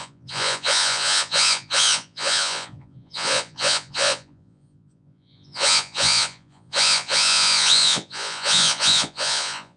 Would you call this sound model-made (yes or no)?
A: yes